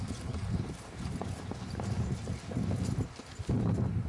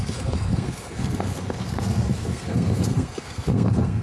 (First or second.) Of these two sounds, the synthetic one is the second